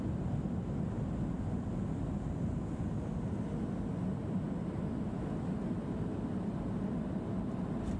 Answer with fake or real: real